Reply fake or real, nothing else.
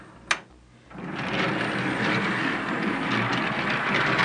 real